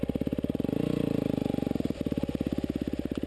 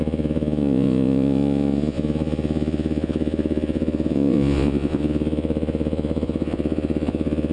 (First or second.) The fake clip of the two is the second